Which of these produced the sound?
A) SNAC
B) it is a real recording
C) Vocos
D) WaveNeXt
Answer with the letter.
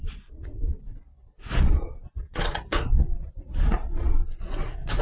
C